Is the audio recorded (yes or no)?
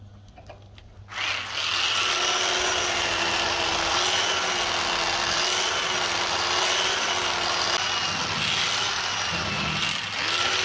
yes